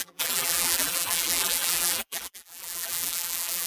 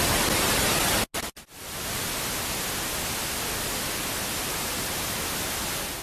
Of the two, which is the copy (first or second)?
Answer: first